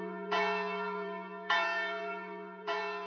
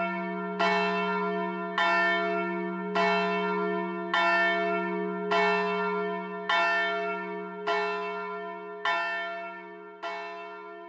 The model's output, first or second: first